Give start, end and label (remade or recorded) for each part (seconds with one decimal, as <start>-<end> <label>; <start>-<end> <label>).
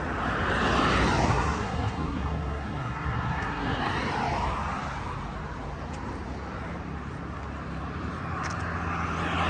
0.0-1.3 recorded; 1.3-3.8 remade; 3.8-9.5 recorded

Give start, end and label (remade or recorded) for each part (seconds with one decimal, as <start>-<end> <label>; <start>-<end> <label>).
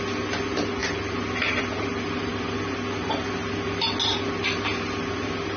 0.0-5.6 recorded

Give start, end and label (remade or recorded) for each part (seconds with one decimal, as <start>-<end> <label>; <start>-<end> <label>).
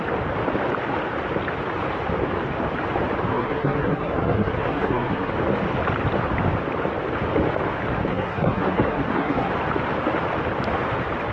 0.0-3.3 recorded; 3.3-5.3 remade; 5.3-8.1 recorded; 8.1-9.5 remade; 9.5-11.3 recorded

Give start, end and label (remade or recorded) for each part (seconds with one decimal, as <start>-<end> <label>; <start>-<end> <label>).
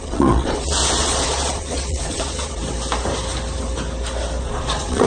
0.0-2.6 remade; 2.6-4.4 recorded; 4.4-5.1 remade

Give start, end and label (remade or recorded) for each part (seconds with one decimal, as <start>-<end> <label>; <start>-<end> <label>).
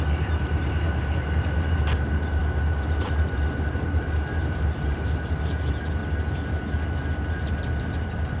0.0-2.4 remade; 2.4-3.3 recorded; 3.3-6.0 remade; 6.0-7.8 recorded; 7.8-8.4 remade